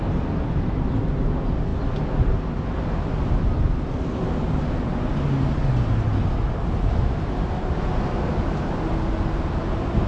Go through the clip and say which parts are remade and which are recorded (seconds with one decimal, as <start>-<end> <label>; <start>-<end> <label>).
0.0-10.1 recorded